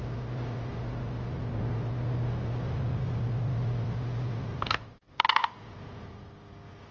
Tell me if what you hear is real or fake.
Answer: real